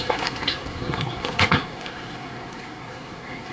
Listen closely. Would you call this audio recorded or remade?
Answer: remade